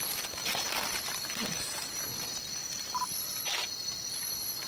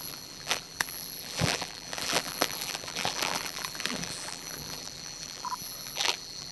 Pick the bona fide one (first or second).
first